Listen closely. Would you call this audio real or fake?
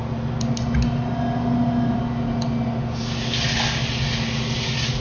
real